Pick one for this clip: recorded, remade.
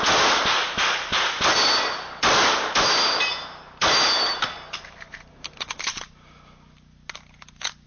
recorded